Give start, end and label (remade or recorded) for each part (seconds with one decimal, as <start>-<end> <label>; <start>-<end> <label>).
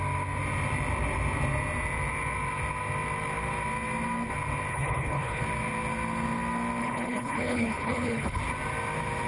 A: 0.0-4.7 recorded; 4.7-5.4 remade; 5.4-6.8 recorded; 6.8-8.4 remade; 8.4-9.3 recorded